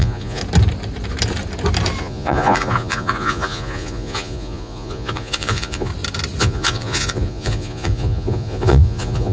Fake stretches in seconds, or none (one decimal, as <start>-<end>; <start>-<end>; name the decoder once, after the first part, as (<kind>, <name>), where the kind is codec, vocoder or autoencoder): 0.0-0.4 (vocoder, Vocos); 2.0-5.9; 6.4-9.3